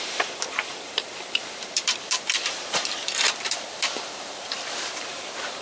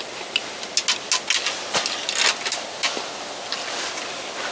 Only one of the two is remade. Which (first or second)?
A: first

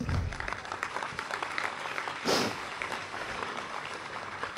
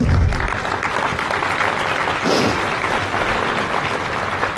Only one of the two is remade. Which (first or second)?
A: first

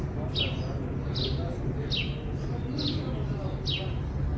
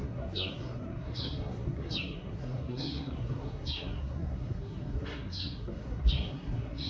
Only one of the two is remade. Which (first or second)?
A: second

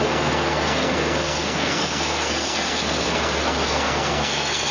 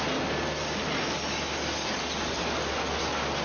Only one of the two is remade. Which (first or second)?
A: first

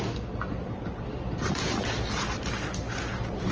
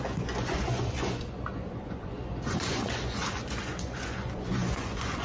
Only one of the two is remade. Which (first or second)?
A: second